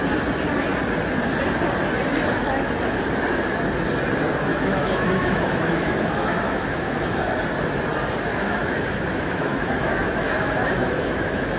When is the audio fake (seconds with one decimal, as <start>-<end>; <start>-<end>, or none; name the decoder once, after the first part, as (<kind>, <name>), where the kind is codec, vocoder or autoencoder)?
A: 4.5-7.4 (autoencoder, DAC-VAE); 8.3-11.6